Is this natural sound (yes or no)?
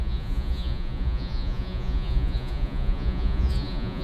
no